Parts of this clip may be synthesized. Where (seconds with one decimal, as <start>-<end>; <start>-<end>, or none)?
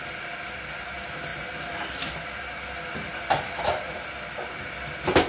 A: none